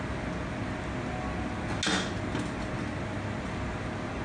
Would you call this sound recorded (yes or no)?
yes